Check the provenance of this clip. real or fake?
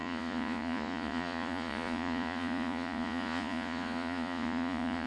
fake